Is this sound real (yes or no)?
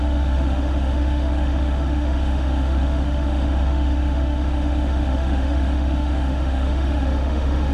no